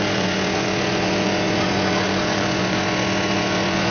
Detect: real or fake fake